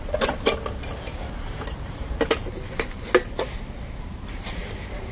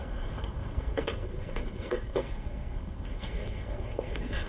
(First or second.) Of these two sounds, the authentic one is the first